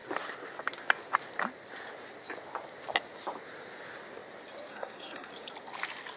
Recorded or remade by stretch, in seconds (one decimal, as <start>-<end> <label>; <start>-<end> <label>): 0.0-4.7 recorded; 4.7-5.3 remade; 5.3-6.2 recorded